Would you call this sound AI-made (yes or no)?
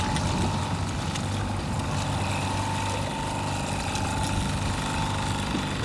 no